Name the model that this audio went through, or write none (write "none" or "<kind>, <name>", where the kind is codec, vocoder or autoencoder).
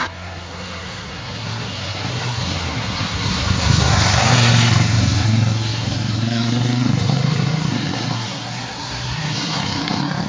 codec, SNAC